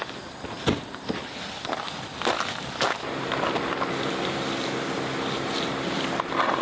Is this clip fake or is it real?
real